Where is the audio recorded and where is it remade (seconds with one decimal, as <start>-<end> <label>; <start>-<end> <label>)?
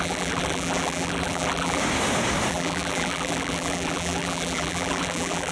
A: 0.0-1.8 remade; 1.8-2.5 recorded; 2.5-5.5 remade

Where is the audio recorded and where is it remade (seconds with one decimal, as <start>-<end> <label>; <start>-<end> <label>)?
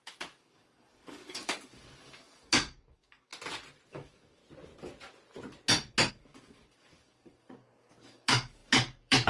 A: 0.0-3.3 remade; 3.3-3.9 recorded; 3.9-4.4 remade; 4.4-6.1 recorded; 6.1-9.3 remade